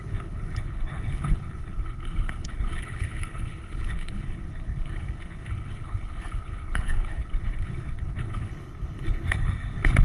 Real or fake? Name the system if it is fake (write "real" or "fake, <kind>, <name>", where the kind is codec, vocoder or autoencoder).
fake, codec, HILCodec